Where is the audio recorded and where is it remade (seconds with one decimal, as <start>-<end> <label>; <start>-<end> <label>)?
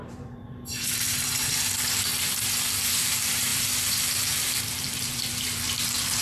0.0-2.1 remade; 2.1-2.9 recorded; 2.9-6.2 remade